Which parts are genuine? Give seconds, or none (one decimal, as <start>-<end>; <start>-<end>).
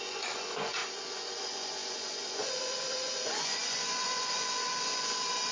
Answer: none